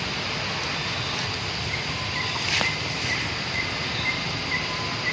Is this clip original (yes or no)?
yes